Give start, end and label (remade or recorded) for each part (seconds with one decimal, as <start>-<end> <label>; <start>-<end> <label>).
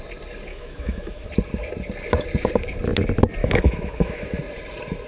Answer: 0.0-0.5 recorded; 0.5-1.3 remade; 1.3-3.4 recorded; 3.4-4.4 remade; 4.4-5.1 recorded